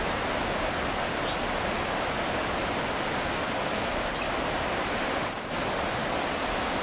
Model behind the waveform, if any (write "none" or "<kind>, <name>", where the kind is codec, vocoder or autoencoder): none